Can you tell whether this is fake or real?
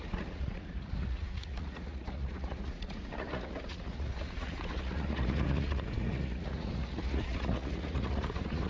fake